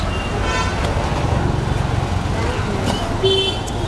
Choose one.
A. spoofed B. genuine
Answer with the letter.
B